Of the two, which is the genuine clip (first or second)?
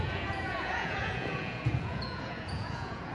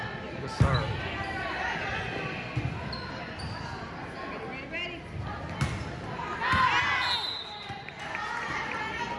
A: second